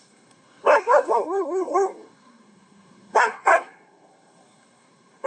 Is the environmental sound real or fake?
fake